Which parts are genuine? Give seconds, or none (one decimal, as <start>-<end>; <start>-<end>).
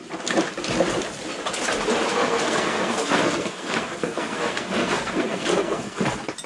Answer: 0.0-2.1; 6.0-6.5